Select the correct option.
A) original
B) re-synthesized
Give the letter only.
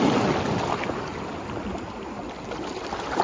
A